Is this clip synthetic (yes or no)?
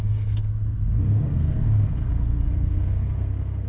yes